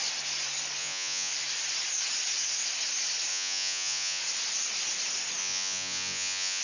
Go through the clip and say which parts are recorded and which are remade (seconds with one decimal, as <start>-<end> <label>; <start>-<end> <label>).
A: 0.0-0.8 recorded; 0.8-1.3 remade; 1.3-3.3 recorded; 3.3-4.2 remade; 4.2-5.4 recorded; 5.4-6.6 remade